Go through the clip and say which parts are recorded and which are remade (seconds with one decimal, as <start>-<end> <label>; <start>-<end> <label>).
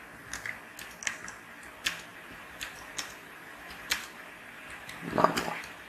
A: 0.0-2.1 recorded; 2.1-5.2 remade; 5.2-5.9 recorded